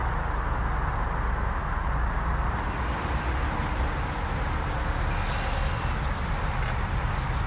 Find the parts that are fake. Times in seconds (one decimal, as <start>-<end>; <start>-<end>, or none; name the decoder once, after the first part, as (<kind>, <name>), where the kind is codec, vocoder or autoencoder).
none